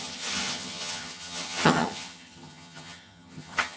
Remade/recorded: remade